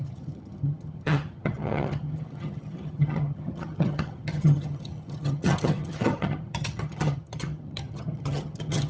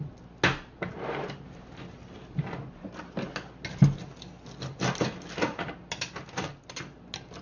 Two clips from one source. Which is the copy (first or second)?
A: first